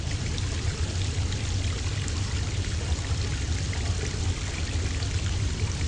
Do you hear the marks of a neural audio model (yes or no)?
no